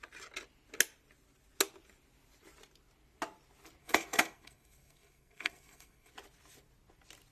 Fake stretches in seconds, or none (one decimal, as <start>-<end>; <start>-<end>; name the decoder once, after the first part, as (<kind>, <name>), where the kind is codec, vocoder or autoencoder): 3.8-6.1 (codec, SNAC)